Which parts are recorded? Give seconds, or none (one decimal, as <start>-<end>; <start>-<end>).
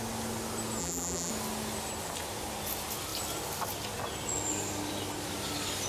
0.0-0.8; 1.3-5.9